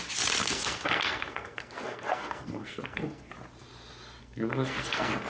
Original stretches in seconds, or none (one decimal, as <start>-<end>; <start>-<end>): 0.0-0.4; 3.3-4.2